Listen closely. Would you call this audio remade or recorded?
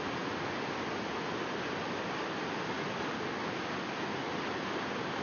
recorded